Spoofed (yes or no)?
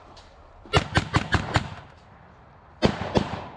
yes